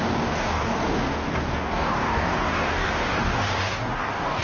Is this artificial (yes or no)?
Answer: yes